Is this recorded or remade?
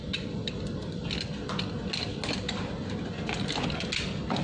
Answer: recorded